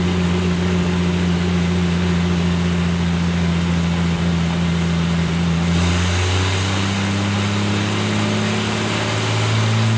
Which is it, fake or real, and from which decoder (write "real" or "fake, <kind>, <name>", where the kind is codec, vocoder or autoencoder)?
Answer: real